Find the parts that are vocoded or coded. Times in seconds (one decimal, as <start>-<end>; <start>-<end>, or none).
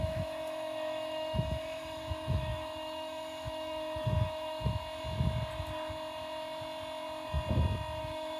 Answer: 0.0-4.7; 8.0-8.4